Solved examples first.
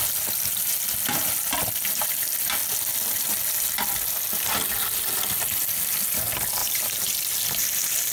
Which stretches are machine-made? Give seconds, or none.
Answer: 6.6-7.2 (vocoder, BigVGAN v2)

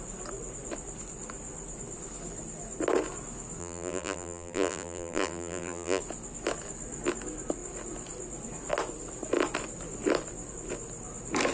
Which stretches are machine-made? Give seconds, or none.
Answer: 3.6-6.0 (vocoder, BigVGAN v2)

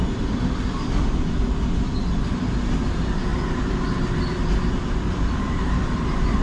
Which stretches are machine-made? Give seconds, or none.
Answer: none

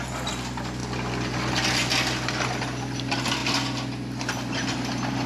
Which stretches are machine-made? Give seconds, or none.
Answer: none

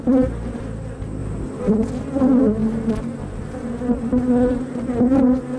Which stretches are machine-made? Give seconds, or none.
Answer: 1.2-1.7 (vocoder, BigVGAN v2)

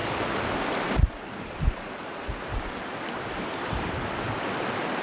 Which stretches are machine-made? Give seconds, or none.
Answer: 0.0-2.4 (vocoder, BigVGAN v2)

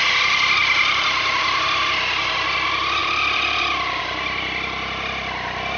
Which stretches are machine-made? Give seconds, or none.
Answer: 0.6-2.2 (vocoder, BigVGAN v2); 3.0-4.0

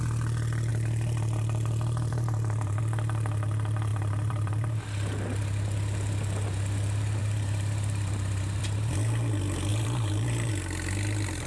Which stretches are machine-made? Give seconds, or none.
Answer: 0.7-2.8 (vocoder, BigVGAN v2); 3.9-4.8; 7.2-8.6; 9.7-10.5